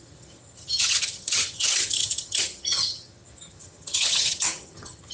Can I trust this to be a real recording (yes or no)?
no